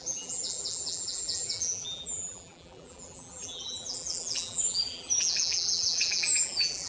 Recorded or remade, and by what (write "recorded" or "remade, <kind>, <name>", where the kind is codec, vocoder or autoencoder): remade, vocoder, BigVGAN v2